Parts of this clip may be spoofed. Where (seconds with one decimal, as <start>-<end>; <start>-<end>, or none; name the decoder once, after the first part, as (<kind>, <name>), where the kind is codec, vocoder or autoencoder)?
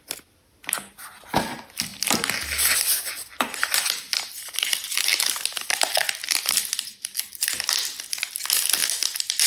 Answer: none